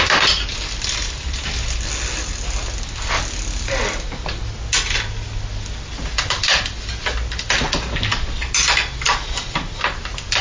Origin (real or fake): real